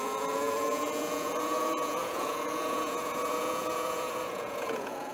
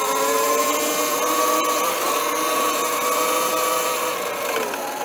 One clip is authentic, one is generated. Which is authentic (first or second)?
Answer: second